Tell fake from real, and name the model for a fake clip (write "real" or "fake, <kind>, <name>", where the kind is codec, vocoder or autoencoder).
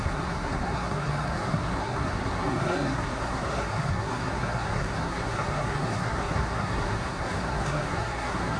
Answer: fake, codec, SNAC